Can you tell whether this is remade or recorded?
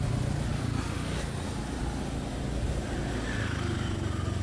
recorded